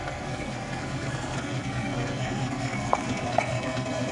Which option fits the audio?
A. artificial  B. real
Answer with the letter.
A